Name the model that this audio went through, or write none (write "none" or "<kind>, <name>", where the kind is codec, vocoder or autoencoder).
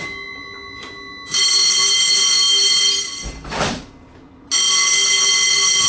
none